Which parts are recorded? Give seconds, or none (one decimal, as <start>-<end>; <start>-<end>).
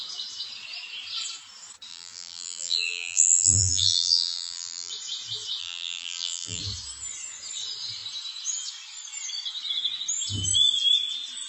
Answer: 0.0-1.9; 4.9-5.6; 6.6-11.5